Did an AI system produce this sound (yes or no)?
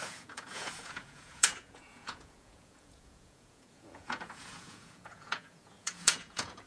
yes